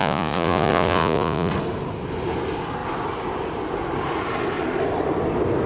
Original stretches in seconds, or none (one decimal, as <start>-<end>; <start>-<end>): 1.5-5.7